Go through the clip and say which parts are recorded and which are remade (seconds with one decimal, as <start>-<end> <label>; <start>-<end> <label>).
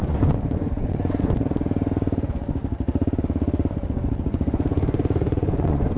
0.0-2.6 remade; 2.6-4.2 recorded; 4.2-6.0 remade